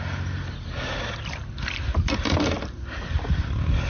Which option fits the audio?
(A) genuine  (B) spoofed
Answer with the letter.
A